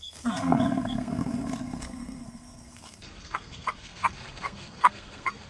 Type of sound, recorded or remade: remade